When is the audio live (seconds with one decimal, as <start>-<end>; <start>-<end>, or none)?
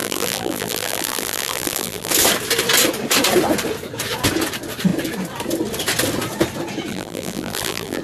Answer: 2.1-6.9